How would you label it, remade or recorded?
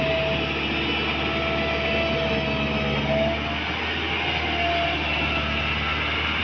recorded